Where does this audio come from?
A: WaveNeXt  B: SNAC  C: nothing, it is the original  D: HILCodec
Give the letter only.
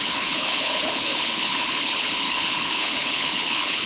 D